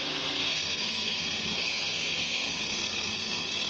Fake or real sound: fake